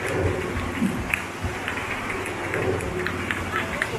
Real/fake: real